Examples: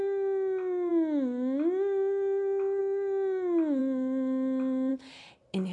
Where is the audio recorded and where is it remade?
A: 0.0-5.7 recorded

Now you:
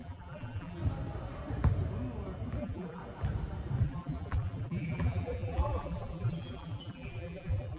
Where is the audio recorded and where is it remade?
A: 0.0-0.8 remade; 0.8-2.6 recorded; 2.6-3.0 remade; 3.0-3.8 recorded; 3.8-7.8 remade

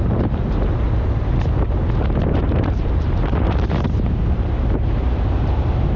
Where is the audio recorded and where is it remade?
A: 0.0-2.4 recorded; 2.4-6.0 remade

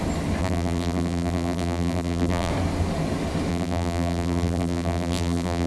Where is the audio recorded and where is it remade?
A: 0.0-0.4 recorded; 0.4-2.5 remade; 2.5-3.5 recorded; 3.5-5.7 remade

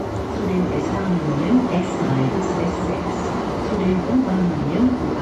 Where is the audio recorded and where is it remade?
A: 0.0-3.9 recorded; 3.9-4.6 remade; 4.6-5.2 recorded

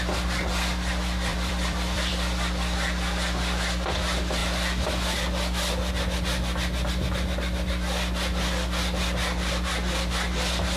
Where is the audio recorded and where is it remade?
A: 0.0-1.3 recorded; 1.3-2.1 remade; 2.1-10.8 recorded

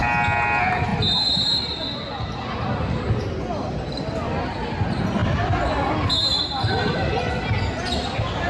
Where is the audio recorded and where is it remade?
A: 0.0-8.5 recorded